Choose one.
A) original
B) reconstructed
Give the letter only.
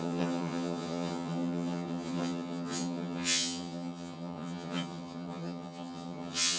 B